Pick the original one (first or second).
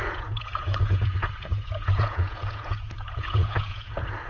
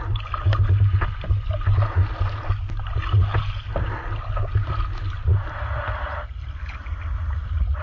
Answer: second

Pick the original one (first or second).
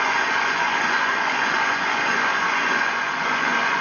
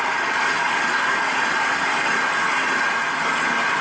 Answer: second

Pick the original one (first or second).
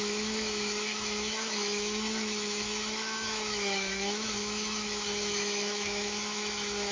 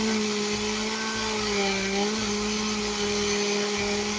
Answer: second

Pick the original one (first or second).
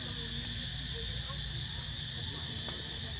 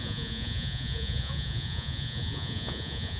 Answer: first